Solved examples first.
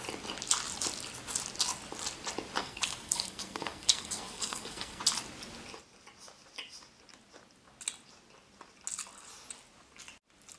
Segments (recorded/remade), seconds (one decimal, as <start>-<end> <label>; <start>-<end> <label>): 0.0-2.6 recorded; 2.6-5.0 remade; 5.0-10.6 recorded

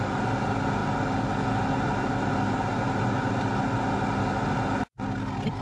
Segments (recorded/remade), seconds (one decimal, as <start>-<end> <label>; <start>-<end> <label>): 0.0-5.6 recorded

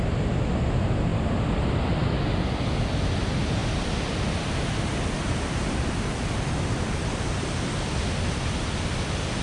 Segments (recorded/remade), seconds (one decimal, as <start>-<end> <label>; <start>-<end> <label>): 0.0-9.4 recorded

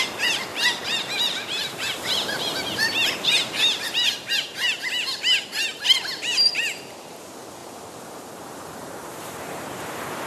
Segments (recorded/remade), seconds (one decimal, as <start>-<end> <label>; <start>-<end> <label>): 0.0-0.5 recorded; 0.5-4.3 remade; 4.3-7.6 recorded; 7.6-9.7 remade; 9.7-10.3 recorded

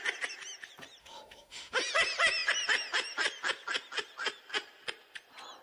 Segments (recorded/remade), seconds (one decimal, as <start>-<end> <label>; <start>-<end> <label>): 0.0-1.0 recorded; 1.0-1.8 remade; 1.8-5.6 recorded

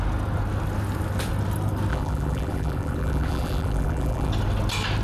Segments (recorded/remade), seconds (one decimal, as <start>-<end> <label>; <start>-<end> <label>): 0.0-1.9 recorded; 1.9-4.3 remade; 4.3-5.0 recorded